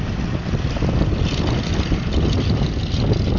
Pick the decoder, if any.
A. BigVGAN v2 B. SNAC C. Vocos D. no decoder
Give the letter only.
D